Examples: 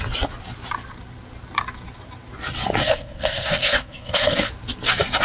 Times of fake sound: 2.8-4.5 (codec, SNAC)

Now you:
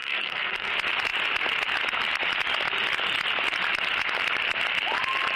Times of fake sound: 0.0-0.7 (codec, SNAC)

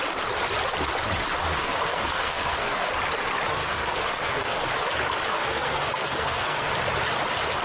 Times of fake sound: 1.6-2.9 (codec, SNAC); 3.5-4.7; 5.3-6.7

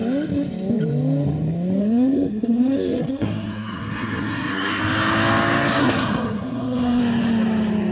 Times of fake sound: 1.8-4.8 (codec, SNAC); 5.8-7.0